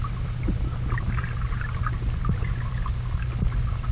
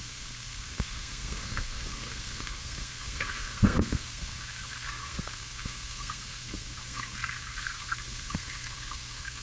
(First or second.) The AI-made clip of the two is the second